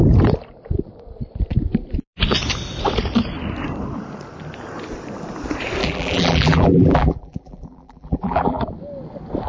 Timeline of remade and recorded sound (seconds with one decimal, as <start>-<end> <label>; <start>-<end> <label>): 0.0-5.8 recorded; 5.8-8.6 remade; 8.6-9.5 recorded